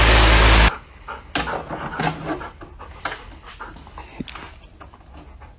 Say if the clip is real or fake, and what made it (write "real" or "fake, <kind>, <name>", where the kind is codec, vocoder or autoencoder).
real